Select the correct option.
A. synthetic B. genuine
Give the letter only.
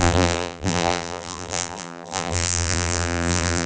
A